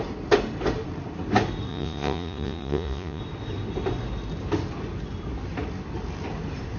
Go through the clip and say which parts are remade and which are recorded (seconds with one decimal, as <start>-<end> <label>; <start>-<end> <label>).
0.0-1.7 recorded; 1.7-3.2 remade; 3.2-6.8 recorded